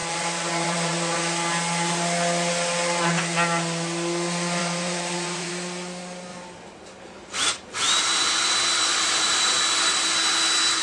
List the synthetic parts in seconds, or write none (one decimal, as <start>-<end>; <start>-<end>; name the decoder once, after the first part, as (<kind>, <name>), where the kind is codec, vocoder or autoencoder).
0.0-1.2 (vocoder, BigVGAN v2); 4.6-5.5; 6.3-9.6